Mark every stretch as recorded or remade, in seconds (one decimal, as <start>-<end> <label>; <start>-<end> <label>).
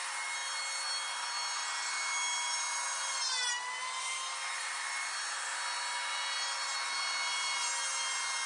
0.0-8.5 recorded